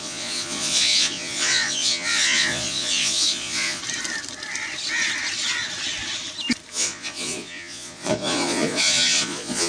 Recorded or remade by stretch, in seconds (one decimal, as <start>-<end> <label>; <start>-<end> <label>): 0.0-3.8 remade; 3.8-6.7 recorded; 6.7-9.7 remade